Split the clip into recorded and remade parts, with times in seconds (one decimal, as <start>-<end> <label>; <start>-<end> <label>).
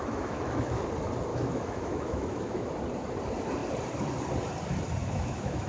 0.0-0.8 remade; 0.8-1.3 recorded; 1.3-2.7 remade; 2.7-5.0 recorded; 5.0-5.7 remade